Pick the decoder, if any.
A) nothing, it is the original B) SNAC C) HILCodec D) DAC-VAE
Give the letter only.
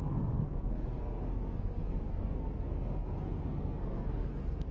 B